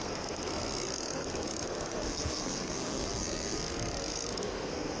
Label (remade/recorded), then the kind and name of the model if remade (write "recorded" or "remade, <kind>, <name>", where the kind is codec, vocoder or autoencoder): remade, codec, SNAC